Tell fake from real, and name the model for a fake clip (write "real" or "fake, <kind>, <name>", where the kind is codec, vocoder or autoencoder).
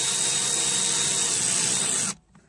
real